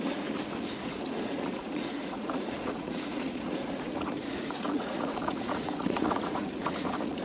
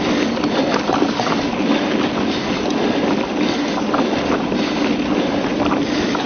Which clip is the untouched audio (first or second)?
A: second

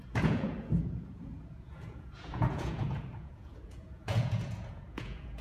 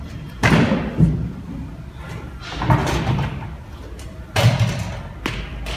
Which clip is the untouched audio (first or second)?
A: second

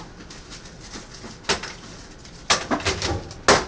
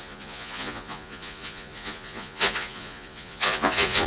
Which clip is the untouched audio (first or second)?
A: first